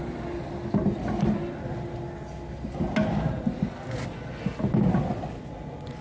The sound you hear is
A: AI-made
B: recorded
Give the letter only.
B